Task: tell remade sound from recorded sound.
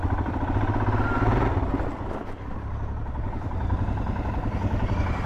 recorded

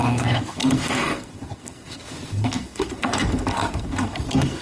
remade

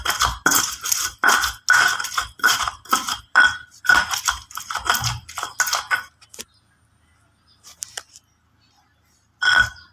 recorded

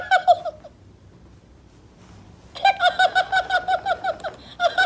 recorded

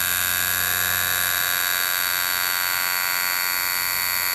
recorded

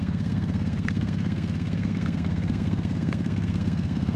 remade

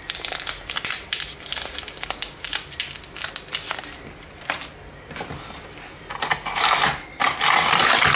recorded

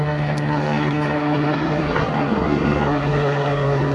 remade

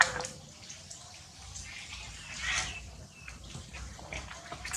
recorded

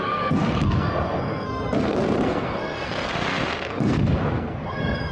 remade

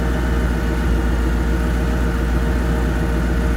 recorded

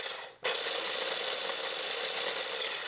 recorded